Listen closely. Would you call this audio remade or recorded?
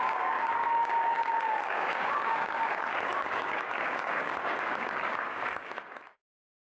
remade